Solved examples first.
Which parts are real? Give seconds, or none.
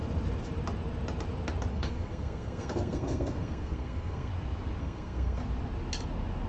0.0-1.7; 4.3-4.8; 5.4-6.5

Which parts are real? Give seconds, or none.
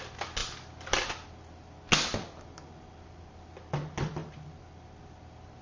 0.0-0.4; 1.3-5.6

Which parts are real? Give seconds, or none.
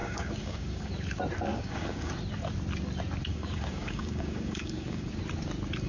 0.9-1.5; 2.1-3.3; 5.1-5.9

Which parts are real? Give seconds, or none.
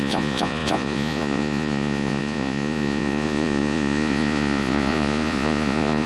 none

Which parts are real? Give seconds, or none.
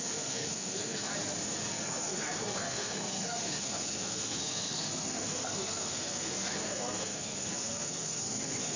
1.1-1.7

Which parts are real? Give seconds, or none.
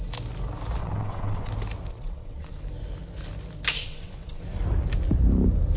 0.0-0.8; 1.5-1.9; 2.6-3.8; 4.4-5.8